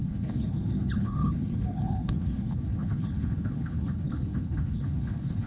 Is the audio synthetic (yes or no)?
yes